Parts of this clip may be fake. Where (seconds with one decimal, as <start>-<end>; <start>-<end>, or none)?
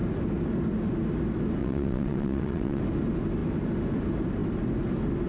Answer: 1.6-2.8